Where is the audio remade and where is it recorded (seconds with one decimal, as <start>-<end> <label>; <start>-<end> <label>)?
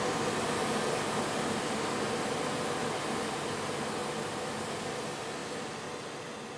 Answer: 0.0-6.6 recorded